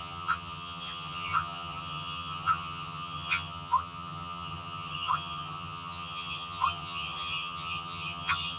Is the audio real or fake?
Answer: fake